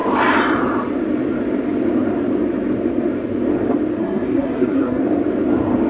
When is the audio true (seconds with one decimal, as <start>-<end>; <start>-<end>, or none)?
0.0-4.0; 5.0-5.9